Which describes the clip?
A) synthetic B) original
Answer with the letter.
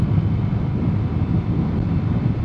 B